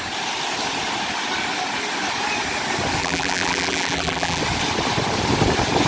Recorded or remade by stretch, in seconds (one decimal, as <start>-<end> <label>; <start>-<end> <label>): 0.0-3.0 recorded; 3.0-4.4 remade; 4.4-5.9 recorded